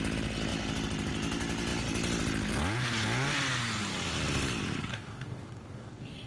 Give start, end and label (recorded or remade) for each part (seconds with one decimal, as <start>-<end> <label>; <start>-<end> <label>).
0.0-4.9 recorded; 4.9-6.3 remade